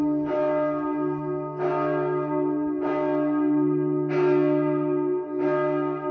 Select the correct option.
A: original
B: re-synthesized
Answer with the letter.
A